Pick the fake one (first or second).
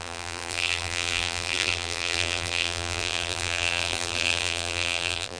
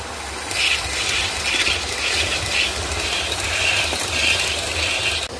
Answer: first